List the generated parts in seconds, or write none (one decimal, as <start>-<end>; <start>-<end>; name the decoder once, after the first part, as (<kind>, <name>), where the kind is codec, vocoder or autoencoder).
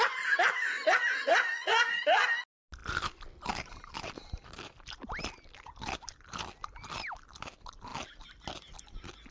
1.2-2.0 (vocoder, Vocos)